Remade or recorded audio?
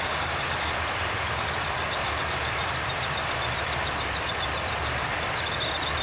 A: remade